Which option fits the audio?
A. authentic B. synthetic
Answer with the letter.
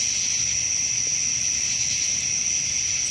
A